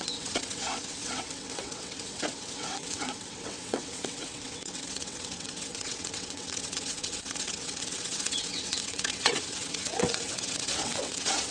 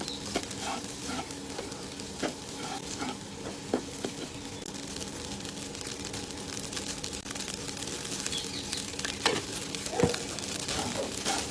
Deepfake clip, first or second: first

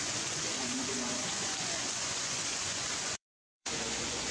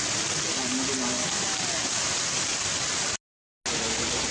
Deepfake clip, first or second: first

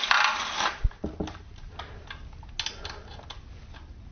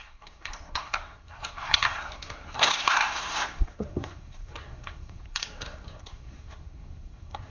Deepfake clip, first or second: second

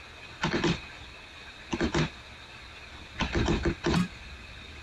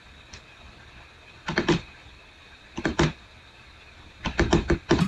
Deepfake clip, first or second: second